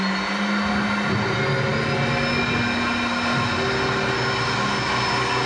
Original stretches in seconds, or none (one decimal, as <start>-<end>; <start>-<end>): 0.0-5.5